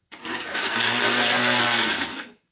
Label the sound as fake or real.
fake